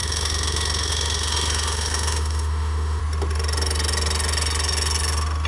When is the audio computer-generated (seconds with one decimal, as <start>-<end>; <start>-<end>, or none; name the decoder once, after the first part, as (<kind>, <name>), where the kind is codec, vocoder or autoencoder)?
0.0-3.0 (autoencoder, DAC-VAE)